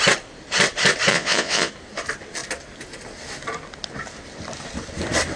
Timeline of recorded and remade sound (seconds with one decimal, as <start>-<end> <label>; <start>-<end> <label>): 0.0-1.1 recorded; 1.1-1.7 remade; 1.7-5.4 recorded